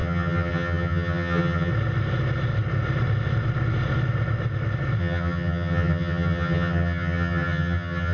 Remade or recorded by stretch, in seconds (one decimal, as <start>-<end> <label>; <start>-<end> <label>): 0.0-1.7 remade; 1.7-5.0 recorded; 5.0-8.1 remade